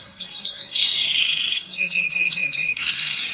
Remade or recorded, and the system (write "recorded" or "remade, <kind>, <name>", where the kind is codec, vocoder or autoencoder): remade, codec, SNAC